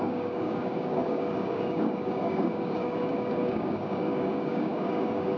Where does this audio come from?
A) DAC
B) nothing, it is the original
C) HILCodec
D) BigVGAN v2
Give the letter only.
A